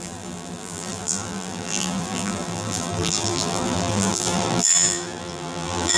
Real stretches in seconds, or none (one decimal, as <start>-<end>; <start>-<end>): none